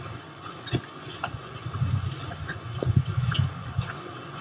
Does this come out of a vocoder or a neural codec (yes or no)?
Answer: yes